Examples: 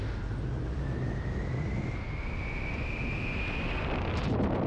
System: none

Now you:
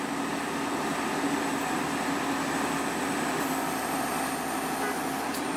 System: none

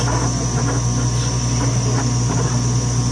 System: none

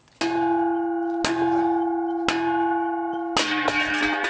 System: none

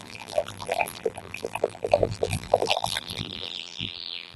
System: vocoder, BigVGAN v2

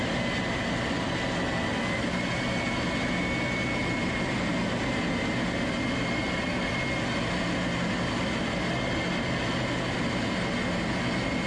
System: none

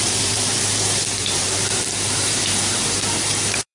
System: vocoder, BigVGAN v2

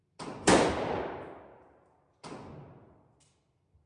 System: none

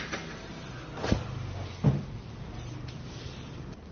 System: vocoder, BigVGAN v2